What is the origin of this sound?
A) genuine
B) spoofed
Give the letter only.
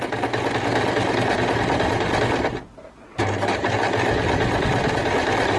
A